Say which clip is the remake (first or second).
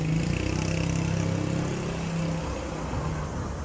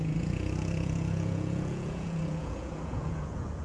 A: second